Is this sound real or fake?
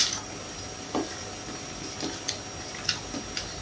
real